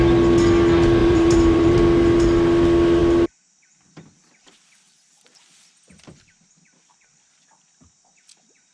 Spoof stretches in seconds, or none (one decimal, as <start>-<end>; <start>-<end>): 1.0-1.8